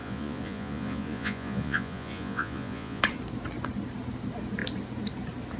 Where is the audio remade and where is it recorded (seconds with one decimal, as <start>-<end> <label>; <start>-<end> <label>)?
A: 0.0-3.0 remade; 3.0-5.6 recorded